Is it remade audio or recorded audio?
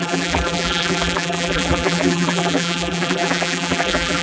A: remade